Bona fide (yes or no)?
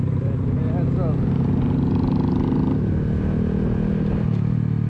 yes